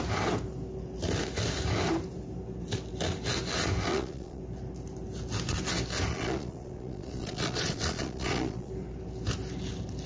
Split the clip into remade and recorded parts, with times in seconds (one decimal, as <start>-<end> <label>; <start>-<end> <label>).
0.0-3.9 recorded; 3.9-4.4 remade; 4.4-6.1 recorded; 6.1-8.7 remade; 8.7-10.1 recorded